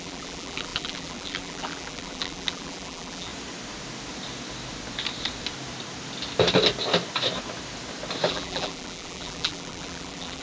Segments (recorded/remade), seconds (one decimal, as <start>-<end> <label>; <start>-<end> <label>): 0.0-3.3 remade; 3.3-8.3 recorded; 8.3-10.4 remade